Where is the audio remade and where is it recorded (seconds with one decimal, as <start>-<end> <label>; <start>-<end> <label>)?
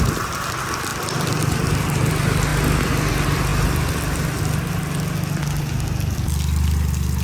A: 0.0-7.2 recorded